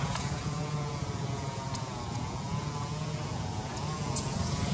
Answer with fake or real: fake